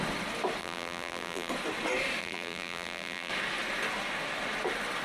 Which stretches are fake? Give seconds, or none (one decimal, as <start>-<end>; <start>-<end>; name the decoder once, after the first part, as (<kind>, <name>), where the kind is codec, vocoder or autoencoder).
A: 0.6-1.5 (vocoder, BigVGAN v2); 2.2-3.3